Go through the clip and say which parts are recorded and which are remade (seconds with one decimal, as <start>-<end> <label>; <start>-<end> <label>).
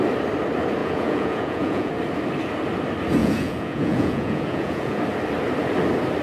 0.0-0.8 recorded; 0.8-1.9 remade; 1.9-3.2 recorded; 3.2-5.0 remade; 5.0-6.2 recorded